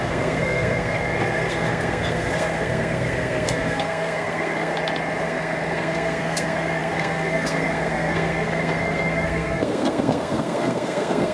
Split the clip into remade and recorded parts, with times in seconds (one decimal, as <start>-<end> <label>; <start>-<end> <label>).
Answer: 0.0-4.7 remade; 4.7-5.2 recorded; 5.2-11.3 remade